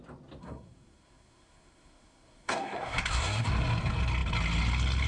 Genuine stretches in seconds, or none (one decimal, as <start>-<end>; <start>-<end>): 0.0-0.4; 3.5-5.1